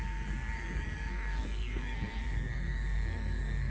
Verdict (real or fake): fake